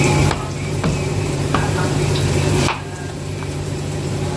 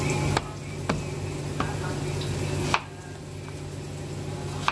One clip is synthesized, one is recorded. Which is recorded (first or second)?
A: second